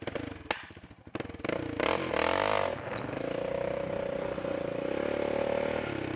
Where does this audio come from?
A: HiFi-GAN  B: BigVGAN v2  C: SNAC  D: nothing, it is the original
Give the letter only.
D